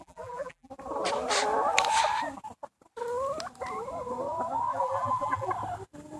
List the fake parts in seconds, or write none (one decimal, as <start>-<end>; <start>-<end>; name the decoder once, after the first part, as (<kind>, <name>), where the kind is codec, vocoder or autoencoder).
0.0-0.7 (vocoder, BigVGAN v2); 4.7-5.5